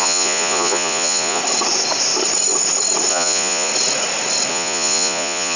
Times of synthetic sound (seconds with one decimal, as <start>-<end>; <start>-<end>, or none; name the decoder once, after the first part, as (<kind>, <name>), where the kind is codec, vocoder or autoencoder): 0.0-1.4 (vocoder, Vocos); 3.1-3.7; 4.5-5.6